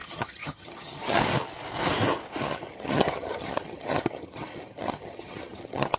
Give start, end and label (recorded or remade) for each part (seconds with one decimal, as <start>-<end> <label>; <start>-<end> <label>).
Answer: 0.0-1.2 remade; 1.2-2.4 recorded; 2.4-6.0 remade